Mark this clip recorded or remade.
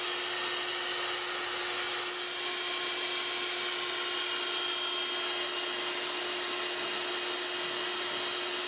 recorded